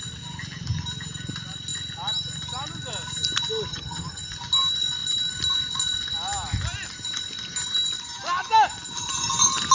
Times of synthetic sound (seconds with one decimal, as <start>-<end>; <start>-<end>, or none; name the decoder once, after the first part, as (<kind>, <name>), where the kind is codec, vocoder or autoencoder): 3.7-4.2 (vocoder, HiFi-GAN)

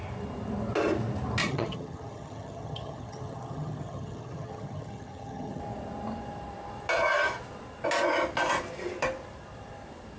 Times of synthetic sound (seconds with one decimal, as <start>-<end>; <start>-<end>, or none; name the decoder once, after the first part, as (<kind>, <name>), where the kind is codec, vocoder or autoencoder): 1.4-5.6 (vocoder, HiFi-GAN)

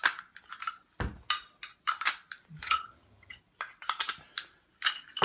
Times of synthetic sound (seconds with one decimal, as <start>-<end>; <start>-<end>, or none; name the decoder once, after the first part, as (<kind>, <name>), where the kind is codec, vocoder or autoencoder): 2.6-3.4 (vocoder, HiFi-GAN)

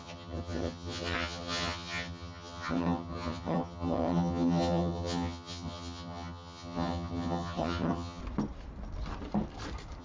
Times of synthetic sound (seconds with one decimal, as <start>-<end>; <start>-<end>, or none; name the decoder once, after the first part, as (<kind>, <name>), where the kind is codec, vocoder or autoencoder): 0.0-8.2 (vocoder, HiFi-GAN)

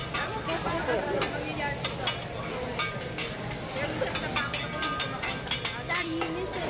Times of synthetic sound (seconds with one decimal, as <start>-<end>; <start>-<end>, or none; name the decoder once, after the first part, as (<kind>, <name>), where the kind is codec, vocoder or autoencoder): none

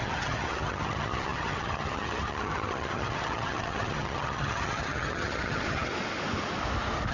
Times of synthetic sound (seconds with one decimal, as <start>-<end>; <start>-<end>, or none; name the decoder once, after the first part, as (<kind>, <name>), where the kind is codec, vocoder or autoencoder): 0.0-5.9 (vocoder, HiFi-GAN)

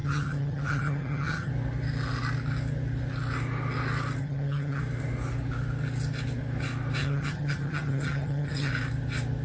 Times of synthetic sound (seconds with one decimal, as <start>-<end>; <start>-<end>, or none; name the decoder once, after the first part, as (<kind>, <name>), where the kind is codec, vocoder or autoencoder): 0.0-1.5 (vocoder, HiFi-GAN); 4.2-4.8; 7.0-8.7